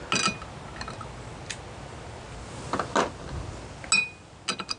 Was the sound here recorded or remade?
recorded